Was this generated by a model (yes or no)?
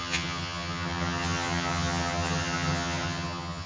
yes